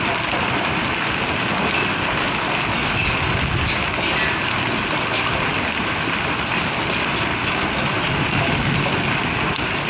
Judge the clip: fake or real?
real